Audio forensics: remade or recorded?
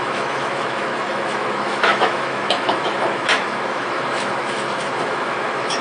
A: remade